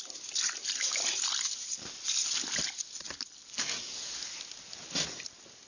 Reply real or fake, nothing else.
real